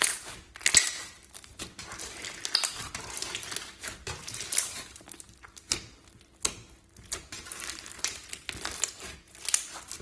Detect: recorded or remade recorded